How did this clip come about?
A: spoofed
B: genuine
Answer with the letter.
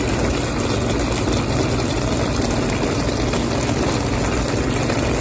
B